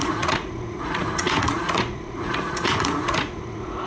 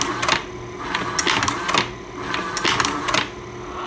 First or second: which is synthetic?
first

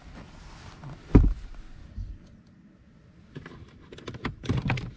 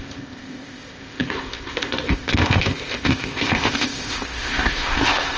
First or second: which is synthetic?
second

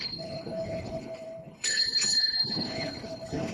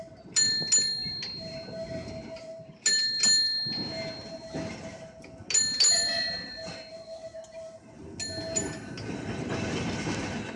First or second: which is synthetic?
first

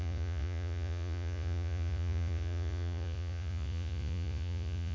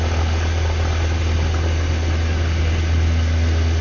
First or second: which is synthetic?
first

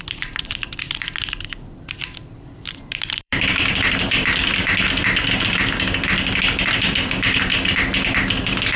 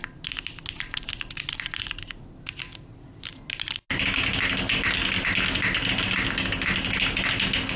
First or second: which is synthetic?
first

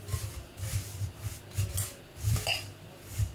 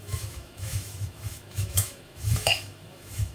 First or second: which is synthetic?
second